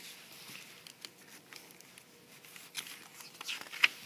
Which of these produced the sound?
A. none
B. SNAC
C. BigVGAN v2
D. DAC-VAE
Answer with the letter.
A